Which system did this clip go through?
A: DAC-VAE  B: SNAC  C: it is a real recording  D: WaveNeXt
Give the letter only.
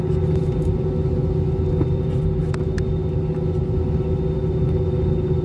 C